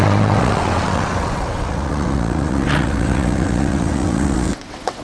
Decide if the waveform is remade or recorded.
remade